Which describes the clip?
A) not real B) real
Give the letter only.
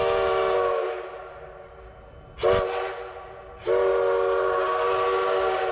B